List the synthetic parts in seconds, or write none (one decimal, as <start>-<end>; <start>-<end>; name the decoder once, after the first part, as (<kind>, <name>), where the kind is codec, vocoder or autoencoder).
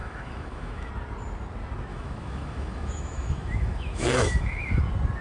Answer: 0.0-0.9 (autoencoder, DAC-VAE); 1.9-4.8